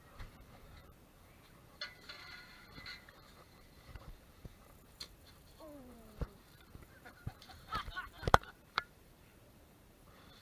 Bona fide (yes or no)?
no